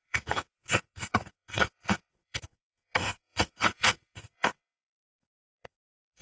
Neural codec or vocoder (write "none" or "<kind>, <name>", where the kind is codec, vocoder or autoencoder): codec, SNAC